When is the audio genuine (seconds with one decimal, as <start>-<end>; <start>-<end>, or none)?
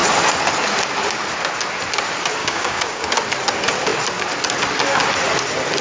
0.0-2.4; 3.1-5.8